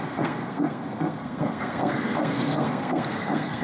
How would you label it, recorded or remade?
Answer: remade